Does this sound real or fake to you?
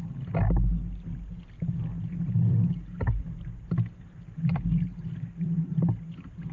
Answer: real